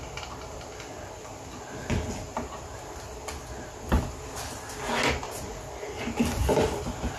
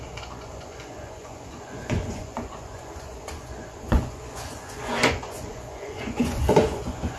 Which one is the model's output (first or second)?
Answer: second